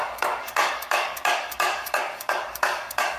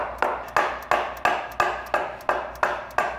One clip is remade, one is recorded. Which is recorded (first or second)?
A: second